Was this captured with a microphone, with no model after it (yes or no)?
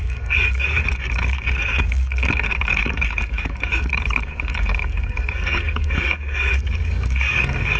no